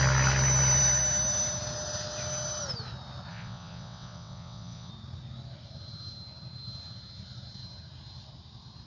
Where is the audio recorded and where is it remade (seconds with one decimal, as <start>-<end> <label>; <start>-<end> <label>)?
0.0-3.3 recorded; 3.3-4.9 remade; 4.9-8.9 recorded